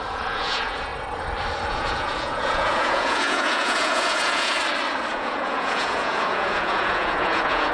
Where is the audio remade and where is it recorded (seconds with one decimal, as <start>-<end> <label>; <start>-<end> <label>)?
0.0-0.9 remade; 0.9-1.7 recorded; 1.7-4.6 remade; 4.6-5.1 recorded; 5.1-7.7 remade